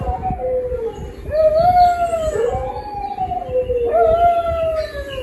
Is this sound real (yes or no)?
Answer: yes